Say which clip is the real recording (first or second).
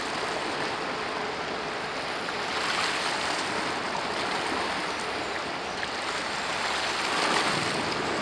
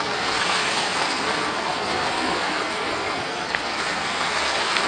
first